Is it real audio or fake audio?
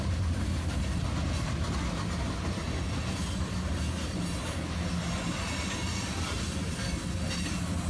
real